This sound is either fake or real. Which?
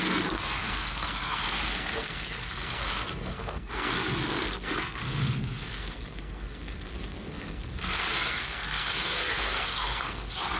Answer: fake